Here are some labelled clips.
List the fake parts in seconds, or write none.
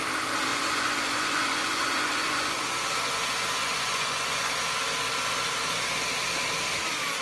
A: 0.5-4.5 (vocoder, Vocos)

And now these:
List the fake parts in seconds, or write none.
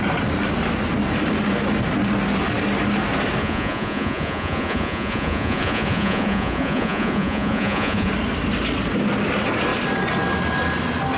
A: 3.4-8.1 (vocoder, Vocos)